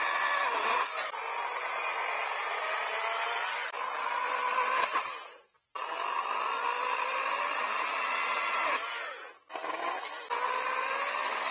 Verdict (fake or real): real